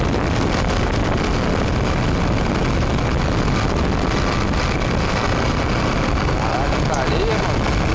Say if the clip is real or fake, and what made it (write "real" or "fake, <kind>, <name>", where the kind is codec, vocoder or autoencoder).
real